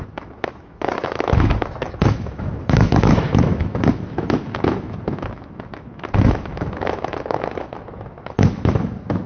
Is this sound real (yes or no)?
no